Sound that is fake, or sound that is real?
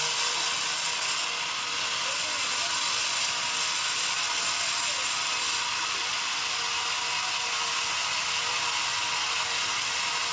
real